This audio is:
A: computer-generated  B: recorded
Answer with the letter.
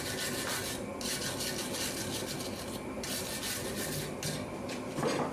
B